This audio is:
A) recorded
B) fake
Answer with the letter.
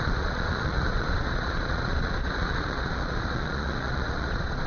B